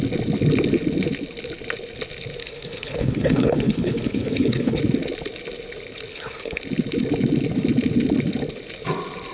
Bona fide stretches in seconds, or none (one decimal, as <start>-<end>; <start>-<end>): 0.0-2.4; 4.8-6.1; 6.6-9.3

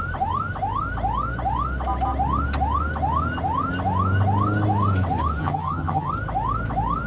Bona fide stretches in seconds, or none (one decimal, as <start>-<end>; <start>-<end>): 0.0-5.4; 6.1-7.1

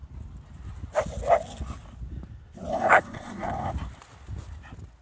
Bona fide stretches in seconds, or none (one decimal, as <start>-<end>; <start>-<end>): 0.0-2.7; 3.7-5.0